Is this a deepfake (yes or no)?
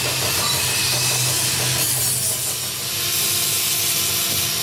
no